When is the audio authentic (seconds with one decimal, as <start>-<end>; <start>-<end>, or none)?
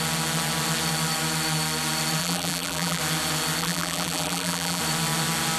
0.0-2.2; 3.0-3.6; 4.8-5.6